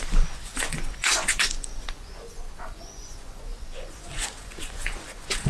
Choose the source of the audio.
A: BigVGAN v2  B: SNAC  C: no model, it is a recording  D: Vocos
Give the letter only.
D